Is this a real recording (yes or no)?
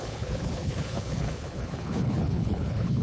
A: no